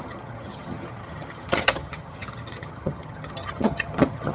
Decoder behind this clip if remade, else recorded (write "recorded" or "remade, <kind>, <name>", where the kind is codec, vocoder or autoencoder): remade, vocoder, HiFi-GAN